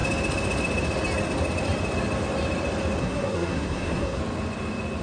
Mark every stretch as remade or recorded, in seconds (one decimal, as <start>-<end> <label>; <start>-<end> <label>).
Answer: 0.0-3.0 recorded; 3.0-4.2 remade; 4.2-5.0 recorded